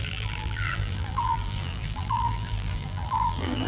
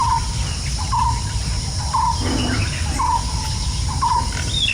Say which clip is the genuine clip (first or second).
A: second